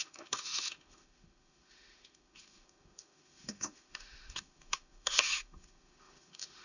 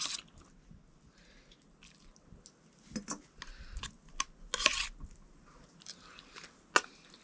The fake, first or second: first